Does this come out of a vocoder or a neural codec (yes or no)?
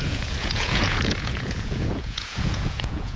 yes